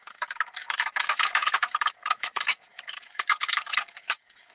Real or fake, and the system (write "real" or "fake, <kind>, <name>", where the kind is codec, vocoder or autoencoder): fake, codec, DAC